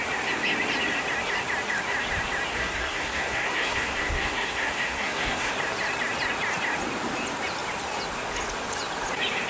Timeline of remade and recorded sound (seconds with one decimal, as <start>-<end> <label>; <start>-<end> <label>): 0.0-2.5 recorded; 2.5-5.5 remade; 5.5-9.5 recorded